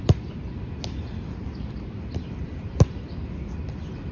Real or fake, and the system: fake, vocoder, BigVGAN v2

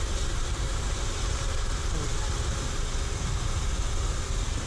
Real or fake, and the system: real